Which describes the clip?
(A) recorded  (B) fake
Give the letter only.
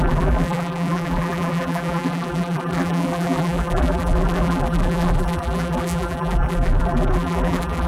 B